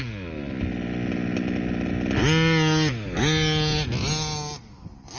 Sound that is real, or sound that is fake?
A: real